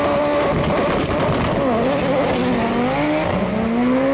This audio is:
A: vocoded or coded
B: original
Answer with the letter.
B